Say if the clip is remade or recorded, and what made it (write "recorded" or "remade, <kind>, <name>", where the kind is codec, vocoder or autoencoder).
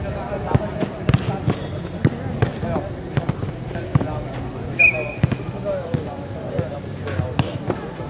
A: recorded